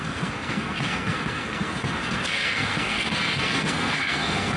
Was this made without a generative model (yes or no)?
no